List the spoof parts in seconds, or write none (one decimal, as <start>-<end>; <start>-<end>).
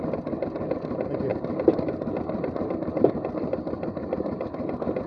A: 1.3-4.4